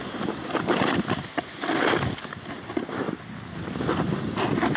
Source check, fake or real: real